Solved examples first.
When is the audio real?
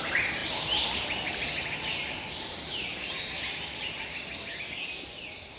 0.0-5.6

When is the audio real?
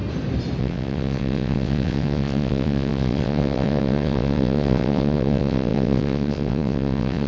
0.0-0.6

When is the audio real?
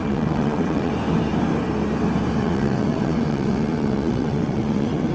0.9-2.4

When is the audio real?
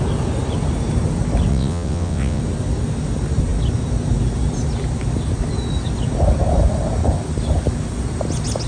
0.0-1.5; 2.4-8.7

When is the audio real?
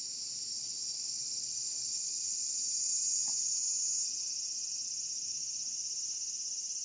0.0-0.5; 2.5-6.8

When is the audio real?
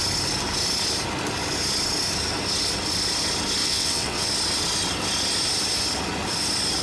0.0-3.6; 4.3-6.8